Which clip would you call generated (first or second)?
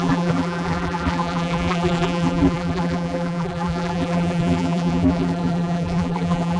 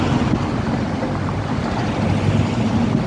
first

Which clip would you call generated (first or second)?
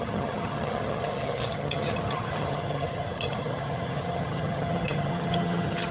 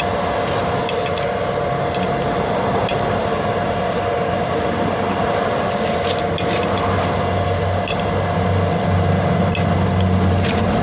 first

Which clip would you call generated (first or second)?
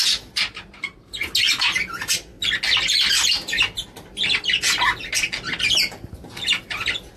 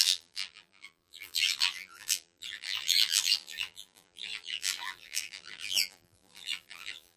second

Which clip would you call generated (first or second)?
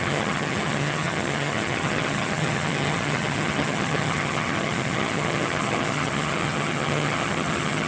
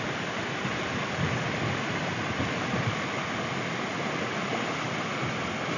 first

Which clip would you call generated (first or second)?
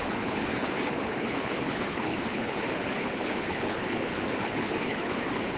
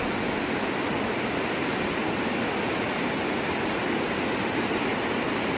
first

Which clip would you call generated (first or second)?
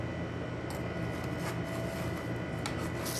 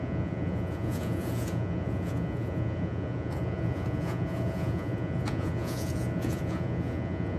second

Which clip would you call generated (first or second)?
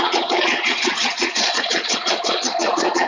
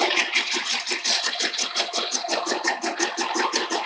first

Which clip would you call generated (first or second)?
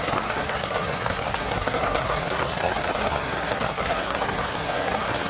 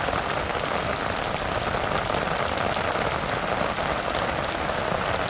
first